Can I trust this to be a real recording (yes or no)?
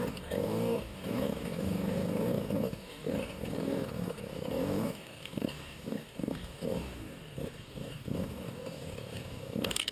no